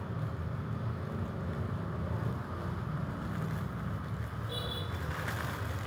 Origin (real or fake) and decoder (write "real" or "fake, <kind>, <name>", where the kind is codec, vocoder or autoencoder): real